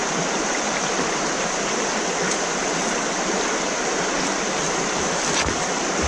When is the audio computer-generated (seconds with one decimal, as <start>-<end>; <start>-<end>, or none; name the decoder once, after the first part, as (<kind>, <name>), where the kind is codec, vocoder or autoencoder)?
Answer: none

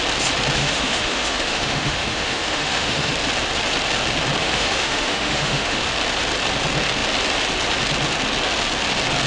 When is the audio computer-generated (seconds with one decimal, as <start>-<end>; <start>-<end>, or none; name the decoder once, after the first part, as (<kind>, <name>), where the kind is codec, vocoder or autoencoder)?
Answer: 0.6-3.1 (autoencoder, DAC-VAE); 4.4-5.8

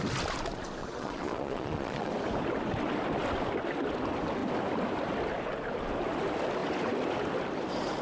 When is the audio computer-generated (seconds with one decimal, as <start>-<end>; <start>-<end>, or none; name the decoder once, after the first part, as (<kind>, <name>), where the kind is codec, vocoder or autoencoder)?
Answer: 0.8-2.1 (vocoder, Vocos)

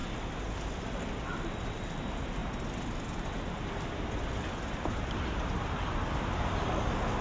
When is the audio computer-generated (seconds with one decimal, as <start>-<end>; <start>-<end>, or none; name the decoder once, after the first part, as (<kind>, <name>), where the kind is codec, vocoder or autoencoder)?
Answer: none